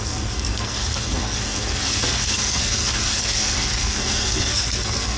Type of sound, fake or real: fake